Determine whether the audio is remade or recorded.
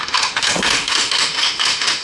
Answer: remade